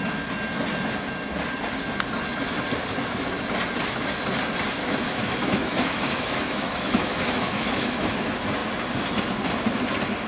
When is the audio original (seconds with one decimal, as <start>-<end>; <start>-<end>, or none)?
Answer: 0.0-4.8; 8.1-10.3